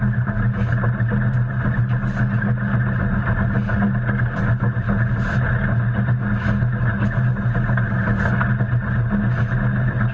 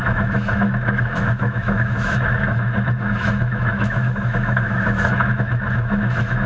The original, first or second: first